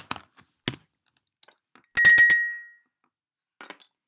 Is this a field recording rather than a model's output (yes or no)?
yes